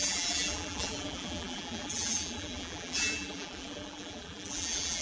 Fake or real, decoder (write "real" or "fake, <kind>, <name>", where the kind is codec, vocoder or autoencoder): fake, vocoder, BigVGAN v2